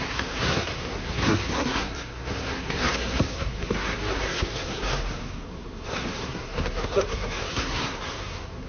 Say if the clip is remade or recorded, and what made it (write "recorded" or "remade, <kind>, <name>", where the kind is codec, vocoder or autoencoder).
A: remade, codec, SNAC